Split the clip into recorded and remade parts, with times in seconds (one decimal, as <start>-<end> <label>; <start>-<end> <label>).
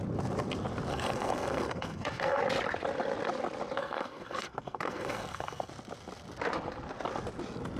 0.0-0.9 recorded; 0.9-2.4 remade; 2.4-3.8 recorded; 3.8-5.7 remade; 5.7-7.8 recorded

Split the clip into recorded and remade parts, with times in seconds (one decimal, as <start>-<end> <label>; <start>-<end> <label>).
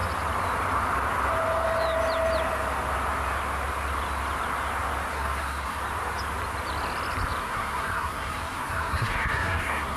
0.0-5.1 recorded; 5.1-5.8 remade; 5.8-7.4 recorded; 7.4-10.0 remade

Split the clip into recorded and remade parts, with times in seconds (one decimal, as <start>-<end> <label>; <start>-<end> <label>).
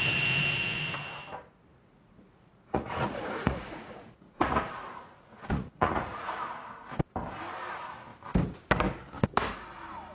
0.0-1.7 recorded; 1.7-6.3 remade; 6.3-10.1 recorded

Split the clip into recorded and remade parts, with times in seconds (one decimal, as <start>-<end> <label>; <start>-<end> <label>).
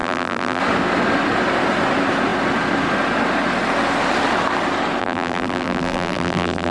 0.0-0.6 remade; 0.6-5.0 recorded; 5.0-6.7 remade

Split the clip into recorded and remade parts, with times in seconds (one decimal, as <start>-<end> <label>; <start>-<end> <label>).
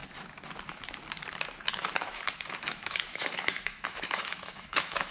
0.0-1.7 recorded; 1.7-5.1 remade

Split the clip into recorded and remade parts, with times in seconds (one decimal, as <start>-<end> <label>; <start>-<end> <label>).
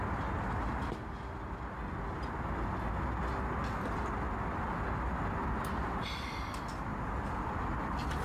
0.0-8.2 recorded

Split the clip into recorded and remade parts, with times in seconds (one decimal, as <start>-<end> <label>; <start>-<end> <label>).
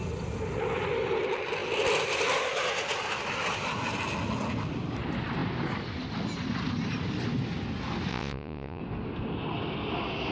0.0-8.1 recorded; 8.1-8.8 remade; 8.8-10.3 recorded